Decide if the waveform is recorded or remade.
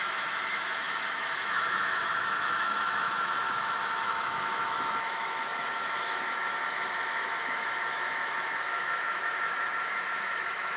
remade